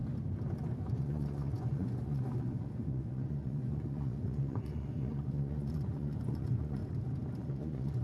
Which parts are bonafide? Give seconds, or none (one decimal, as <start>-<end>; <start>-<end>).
0.0-0.9; 6.8-7.4